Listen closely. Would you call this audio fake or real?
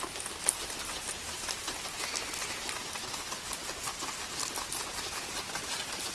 real